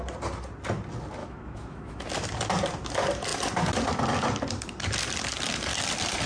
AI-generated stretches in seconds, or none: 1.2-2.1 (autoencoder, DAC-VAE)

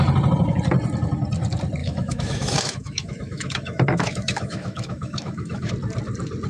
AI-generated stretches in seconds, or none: 1.8-5.7 (autoencoder, DAC-VAE)

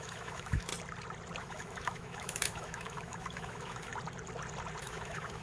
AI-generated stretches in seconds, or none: 0.0-0.7 (autoencoder, DAC-VAE); 1.4-3.9; 4.8-5.4

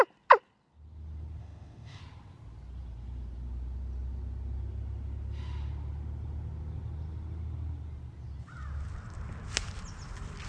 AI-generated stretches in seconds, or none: 1.4-2.0 (autoencoder, DAC-VAE)

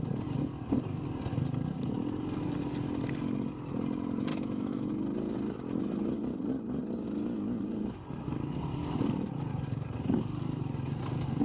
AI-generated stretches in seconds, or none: 4.3-4.9 (autoencoder, DAC-VAE)

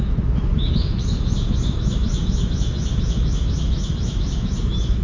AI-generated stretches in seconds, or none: 0.0-5.0 (autoencoder, DAC-VAE)

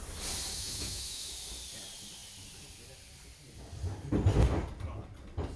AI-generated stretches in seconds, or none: 0.5-1.3 (autoencoder, DAC-VAE)